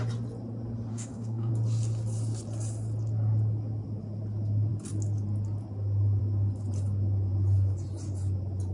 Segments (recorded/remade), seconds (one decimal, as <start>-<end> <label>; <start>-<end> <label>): 0.0-0.9 recorded; 0.9-1.5 remade; 1.5-8.7 recorded